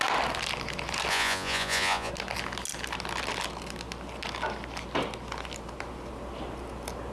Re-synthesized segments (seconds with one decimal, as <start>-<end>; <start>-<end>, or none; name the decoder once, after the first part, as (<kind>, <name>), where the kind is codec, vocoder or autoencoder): 1.1-2.1 (vocoder, Vocos)